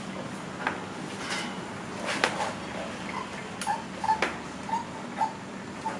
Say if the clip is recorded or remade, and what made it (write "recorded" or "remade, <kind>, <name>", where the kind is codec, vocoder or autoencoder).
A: recorded